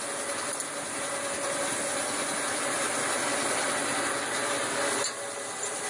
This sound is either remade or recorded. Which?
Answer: recorded